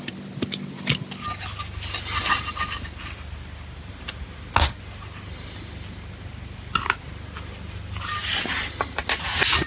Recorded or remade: recorded